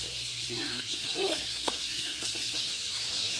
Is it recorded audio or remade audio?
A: remade